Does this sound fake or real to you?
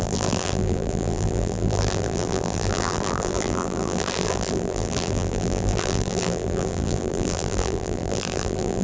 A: fake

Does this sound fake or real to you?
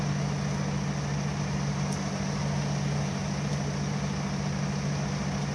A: real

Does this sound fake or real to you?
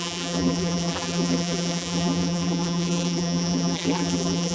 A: fake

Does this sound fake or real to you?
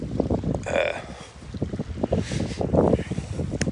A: real